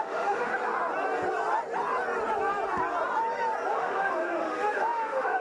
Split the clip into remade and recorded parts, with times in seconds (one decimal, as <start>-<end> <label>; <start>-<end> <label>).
0.0-0.5 remade; 0.5-3.7 recorded; 3.7-5.4 remade